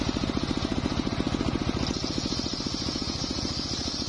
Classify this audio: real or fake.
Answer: real